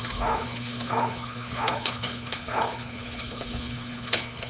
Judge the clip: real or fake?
fake